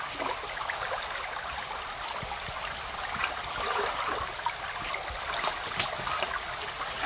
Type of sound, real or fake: real